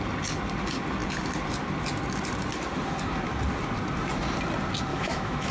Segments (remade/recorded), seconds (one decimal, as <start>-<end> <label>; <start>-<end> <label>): 0.0-4.9 recorded; 4.9-5.5 remade